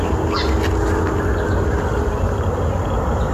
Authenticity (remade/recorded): recorded